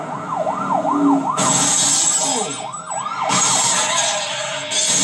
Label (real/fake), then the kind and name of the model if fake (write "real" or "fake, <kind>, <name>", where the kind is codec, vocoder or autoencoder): real